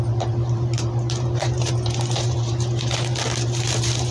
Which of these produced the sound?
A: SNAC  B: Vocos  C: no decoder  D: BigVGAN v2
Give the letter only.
D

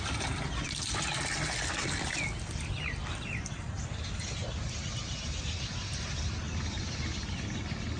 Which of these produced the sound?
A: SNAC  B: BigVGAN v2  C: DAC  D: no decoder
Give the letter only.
D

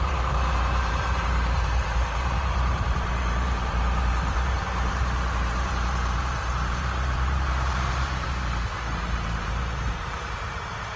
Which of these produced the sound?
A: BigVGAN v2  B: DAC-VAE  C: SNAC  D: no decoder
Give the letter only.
A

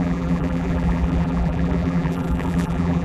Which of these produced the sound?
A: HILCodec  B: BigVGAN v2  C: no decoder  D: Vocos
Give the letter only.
B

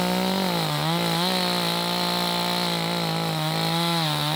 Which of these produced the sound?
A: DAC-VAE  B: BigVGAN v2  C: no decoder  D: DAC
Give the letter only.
C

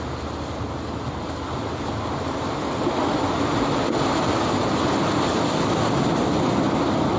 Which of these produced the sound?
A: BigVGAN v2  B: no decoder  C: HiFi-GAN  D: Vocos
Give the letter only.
B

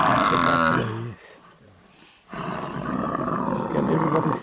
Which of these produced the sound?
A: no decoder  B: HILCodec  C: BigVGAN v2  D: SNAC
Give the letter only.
C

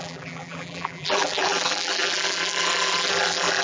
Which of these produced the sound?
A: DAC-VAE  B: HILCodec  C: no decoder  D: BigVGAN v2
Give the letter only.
D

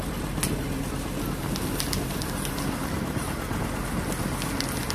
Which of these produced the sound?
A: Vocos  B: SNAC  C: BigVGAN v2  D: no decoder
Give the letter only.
D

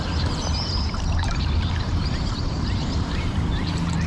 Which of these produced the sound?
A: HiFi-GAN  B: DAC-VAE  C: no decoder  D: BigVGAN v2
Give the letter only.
D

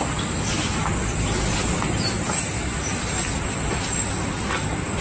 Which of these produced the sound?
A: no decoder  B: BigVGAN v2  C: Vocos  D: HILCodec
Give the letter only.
A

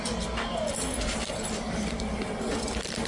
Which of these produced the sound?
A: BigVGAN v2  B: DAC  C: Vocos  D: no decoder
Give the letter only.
A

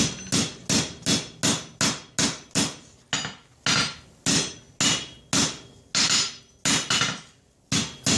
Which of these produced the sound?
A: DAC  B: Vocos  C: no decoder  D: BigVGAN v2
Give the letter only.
C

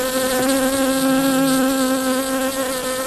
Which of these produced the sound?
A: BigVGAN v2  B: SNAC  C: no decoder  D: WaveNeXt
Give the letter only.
C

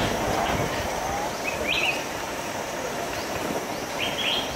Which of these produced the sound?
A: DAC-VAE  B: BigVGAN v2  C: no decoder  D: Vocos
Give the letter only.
B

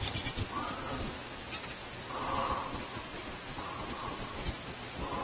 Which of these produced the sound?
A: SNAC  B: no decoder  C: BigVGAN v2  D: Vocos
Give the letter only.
B